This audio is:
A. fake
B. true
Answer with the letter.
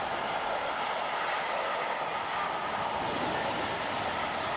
B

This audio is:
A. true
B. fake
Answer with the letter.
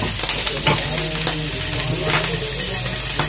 A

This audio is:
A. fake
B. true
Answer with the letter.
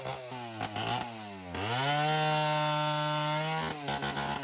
B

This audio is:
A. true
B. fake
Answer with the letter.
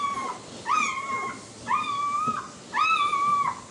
A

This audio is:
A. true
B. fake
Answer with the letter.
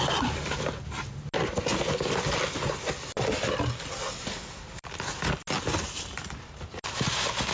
A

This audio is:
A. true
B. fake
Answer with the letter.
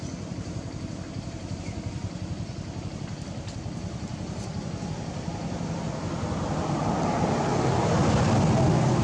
A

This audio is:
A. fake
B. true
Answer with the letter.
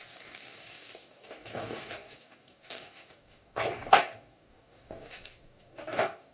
A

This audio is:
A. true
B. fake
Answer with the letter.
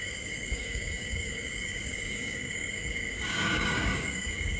B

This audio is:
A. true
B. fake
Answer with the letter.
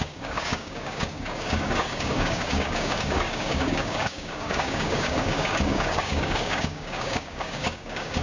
B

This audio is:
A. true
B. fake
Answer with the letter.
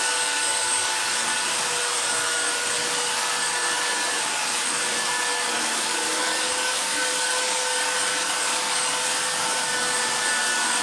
B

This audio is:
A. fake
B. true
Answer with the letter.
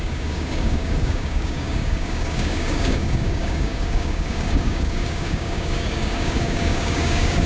A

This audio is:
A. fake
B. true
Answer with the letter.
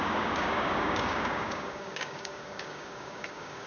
A